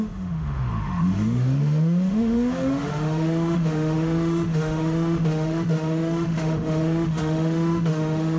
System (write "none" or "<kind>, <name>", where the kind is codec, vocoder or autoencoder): autoencoder, DAC-VAE